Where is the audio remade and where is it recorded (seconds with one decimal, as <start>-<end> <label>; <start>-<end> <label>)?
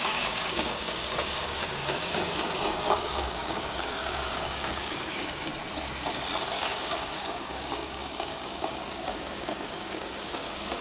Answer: 0.0-5.5 remade; 5.5-6.4 recorded; 6.4-10.8 remade